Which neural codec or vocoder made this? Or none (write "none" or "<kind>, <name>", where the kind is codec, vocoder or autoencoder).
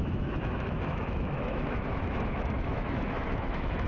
autoencoder, DAC-VAE